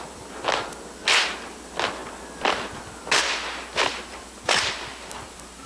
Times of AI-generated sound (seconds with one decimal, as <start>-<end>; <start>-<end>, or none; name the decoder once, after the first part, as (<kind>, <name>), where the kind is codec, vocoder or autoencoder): none